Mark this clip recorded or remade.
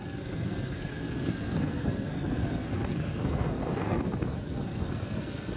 remade